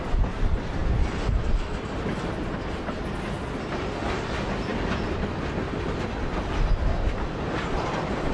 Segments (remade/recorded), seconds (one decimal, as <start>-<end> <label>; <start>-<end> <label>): 0.0-8.3 recorded